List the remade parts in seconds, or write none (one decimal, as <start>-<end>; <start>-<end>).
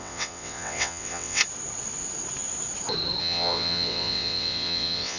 0.0-1.4; 3.2-5.2